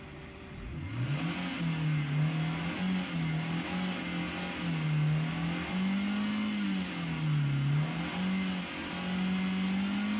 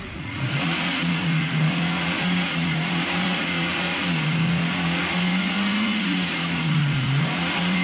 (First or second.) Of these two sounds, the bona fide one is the first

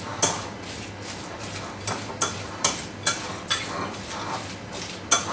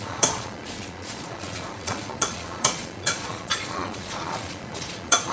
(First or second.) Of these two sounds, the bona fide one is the first